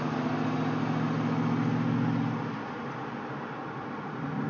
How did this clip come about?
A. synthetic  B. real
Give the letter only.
B